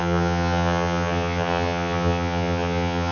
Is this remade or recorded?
remade